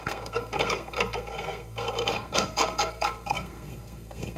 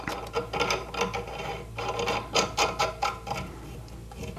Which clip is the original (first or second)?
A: second